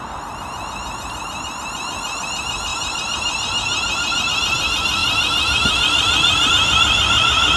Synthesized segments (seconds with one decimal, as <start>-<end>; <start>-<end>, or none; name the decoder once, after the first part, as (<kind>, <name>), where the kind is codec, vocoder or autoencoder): 2.7-4.3 (vocoder, BigVGAN v2)